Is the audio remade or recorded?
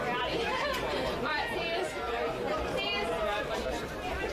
recorded